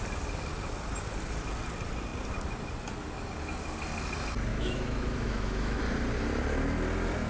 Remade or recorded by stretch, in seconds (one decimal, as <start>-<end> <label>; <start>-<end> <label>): 0.0-4.5 recorded; 4.5-5.8 remade; 5.8-7.3 recorded